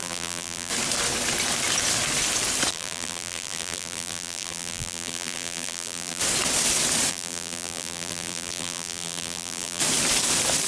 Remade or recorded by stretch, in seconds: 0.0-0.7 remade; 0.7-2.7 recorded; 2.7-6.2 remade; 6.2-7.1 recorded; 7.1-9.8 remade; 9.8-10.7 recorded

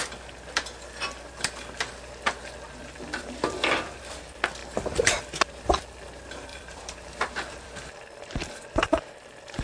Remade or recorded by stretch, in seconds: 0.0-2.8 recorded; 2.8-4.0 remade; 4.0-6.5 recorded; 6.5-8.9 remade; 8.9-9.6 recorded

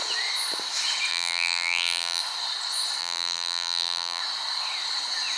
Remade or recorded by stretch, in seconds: 0.0-1.1 recorded; 1.1-2.2 remade; 2.2-3.0 recorded; 3.0-4.2 remade; 4.2-5.4 recorded

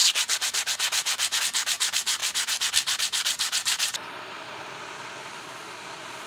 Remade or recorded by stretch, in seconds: 0.0-2.2 recorded; 2.2-6.3 remade